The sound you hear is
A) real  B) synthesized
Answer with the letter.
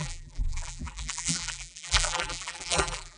B